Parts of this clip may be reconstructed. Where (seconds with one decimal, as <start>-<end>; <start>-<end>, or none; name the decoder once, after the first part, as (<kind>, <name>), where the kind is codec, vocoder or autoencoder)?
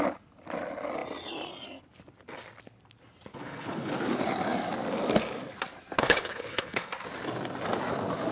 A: 3.3-3.9 (codec, HILCodec); 6.0-6.9